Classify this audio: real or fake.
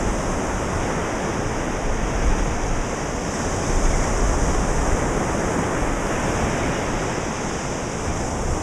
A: real